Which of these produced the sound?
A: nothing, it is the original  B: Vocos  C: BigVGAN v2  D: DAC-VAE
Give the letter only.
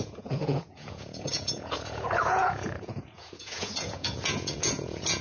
B